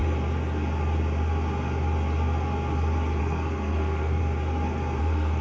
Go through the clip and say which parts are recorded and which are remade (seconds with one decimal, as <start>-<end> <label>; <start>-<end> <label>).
0.0-3.2 recorded; 3.2-4.2 remade; 4.2-5.0 recorded; 5.0-5.4 remade